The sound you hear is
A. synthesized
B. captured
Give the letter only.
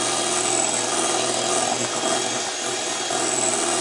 B